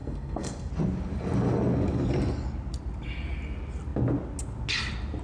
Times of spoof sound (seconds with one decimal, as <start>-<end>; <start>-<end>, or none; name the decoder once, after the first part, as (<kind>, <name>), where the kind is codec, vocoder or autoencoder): 0.0-0.7 (codec, SNAC)